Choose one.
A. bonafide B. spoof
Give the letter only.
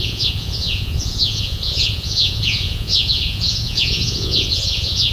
B